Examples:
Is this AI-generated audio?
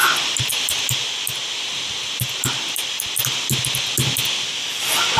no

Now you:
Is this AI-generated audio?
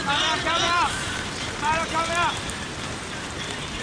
yes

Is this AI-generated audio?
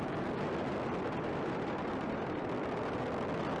no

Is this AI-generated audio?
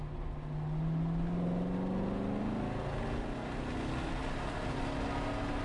no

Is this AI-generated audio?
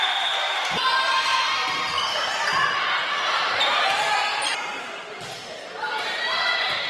yes